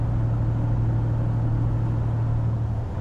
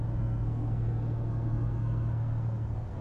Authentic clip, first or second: first